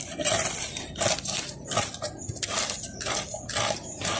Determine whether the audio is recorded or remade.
recorded